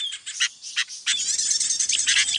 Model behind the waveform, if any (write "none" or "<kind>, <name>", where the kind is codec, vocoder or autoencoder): none